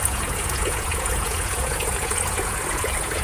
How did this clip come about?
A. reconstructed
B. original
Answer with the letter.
A